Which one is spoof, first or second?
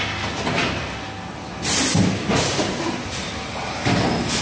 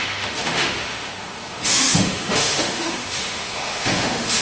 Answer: second